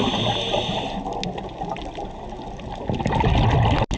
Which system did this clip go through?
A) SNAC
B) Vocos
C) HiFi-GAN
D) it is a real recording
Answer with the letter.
D